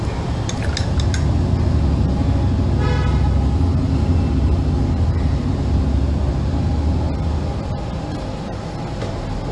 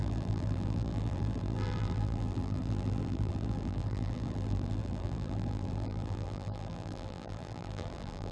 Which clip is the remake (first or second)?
second